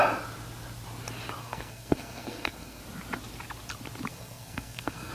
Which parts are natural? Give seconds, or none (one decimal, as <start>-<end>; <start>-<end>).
0.0-1.4; 2.8-4.1